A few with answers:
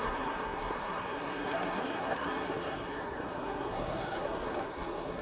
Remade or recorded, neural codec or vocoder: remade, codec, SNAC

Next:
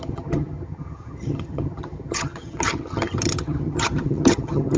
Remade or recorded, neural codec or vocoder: remade, vocoder, HiFi-GAN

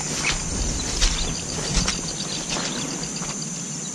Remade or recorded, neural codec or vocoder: recorded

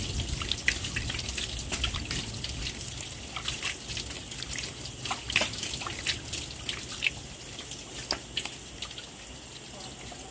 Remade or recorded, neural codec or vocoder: recorded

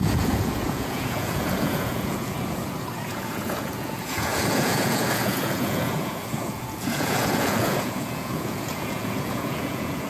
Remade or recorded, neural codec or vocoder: remade, vocoder, Vocos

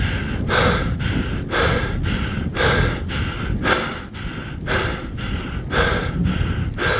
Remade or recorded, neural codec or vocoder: recorded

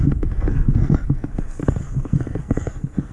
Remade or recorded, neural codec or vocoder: remade, codec, SNAC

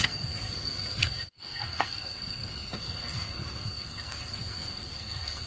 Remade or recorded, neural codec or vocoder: remade, codec, SNAC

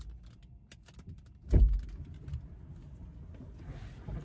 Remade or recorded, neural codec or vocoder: recorded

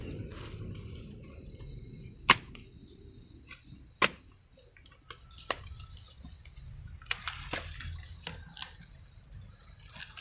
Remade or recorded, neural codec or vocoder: recorded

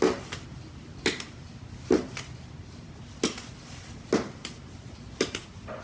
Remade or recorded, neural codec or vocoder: recorded